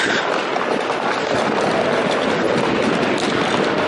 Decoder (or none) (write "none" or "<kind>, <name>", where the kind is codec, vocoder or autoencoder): none